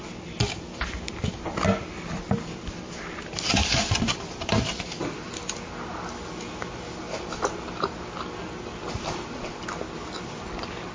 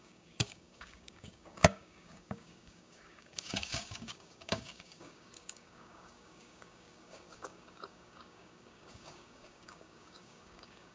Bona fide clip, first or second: first